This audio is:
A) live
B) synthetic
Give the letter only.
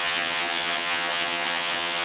B